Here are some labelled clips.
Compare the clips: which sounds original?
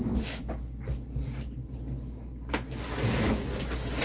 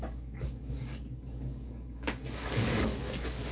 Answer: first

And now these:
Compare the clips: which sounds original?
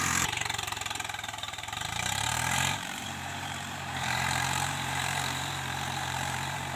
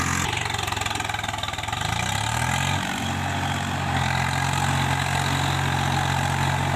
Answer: second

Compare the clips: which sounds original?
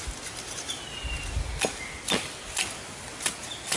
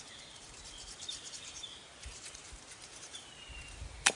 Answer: first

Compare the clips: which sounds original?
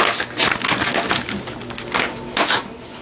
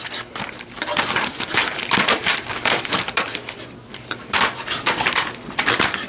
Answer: first